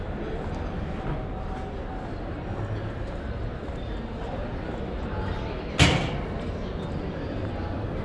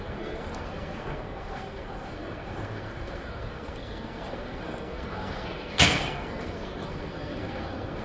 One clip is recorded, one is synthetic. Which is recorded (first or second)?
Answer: first